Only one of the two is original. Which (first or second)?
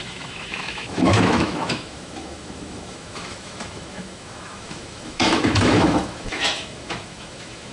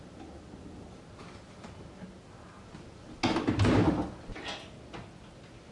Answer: second